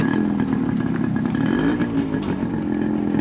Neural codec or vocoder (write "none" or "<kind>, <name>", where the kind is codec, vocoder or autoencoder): none